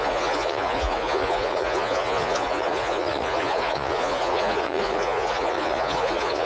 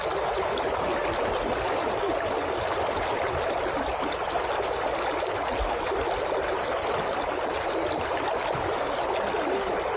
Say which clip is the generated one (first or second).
first